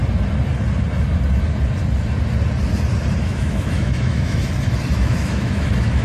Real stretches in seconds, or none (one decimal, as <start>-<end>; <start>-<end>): 0.0-3.2; 4.4-4.9